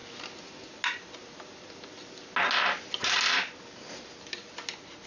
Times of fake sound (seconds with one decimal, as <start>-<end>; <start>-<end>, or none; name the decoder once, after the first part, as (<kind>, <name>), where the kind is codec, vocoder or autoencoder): none